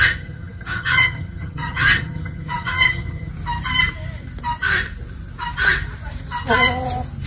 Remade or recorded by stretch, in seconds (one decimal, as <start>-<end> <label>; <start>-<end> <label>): 0.0-3.3 remade; 3.3-7.3 recorded